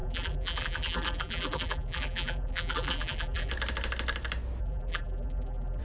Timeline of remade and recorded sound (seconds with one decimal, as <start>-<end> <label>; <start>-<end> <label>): 0.0-3.5 remade; 3.5-4.6 recorded; 4.6-5.8 remade